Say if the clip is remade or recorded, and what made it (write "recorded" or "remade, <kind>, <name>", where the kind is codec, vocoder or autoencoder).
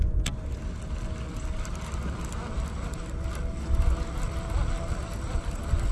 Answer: recorded